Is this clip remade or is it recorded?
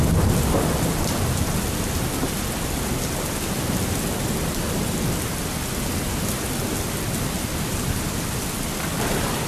recorded